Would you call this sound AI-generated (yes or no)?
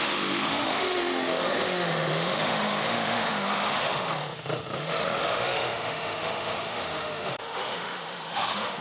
yes